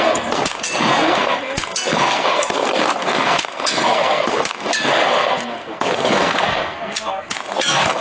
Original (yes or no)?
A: no